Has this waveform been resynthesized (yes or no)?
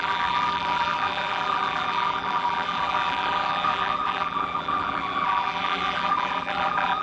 yes